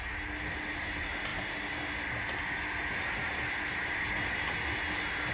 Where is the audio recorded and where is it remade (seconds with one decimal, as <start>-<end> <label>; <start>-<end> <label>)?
0.0-5.3 recorded